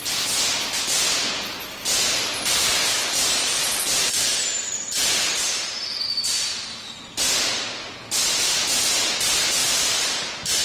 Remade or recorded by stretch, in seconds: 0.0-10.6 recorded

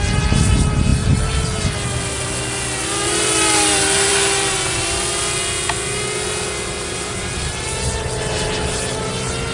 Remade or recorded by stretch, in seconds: 0.0-9.5 recorded

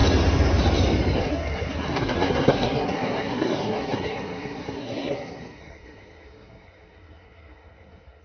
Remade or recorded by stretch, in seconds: 0.0-1.2 recorded; 1.2-8.2 remade

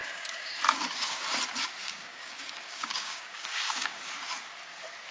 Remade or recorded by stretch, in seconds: 0.0-0.5 remade; 0.5-1.8 recorded; 1.8-4.1 remade; 4.1-5.1 recorded

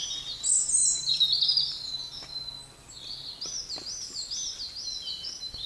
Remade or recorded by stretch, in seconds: 0.0-0.8 recorded; 0.8-1.9 remade; 1.9-5.7 recorded

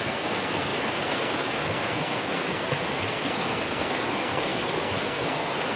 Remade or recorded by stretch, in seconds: 0.0-5.8 remade

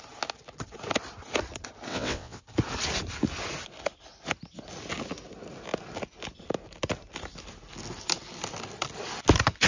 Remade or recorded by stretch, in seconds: 0.0-1.9 recorded; 1.9-2.4 remade; 2.4-9.7 recorded